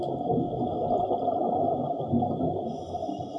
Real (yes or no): yes